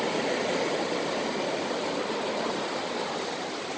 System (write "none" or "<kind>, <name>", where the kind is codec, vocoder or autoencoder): none